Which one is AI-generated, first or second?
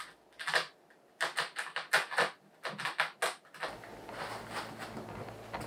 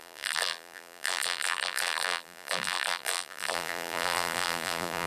second